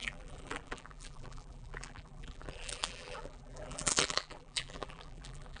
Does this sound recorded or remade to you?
remade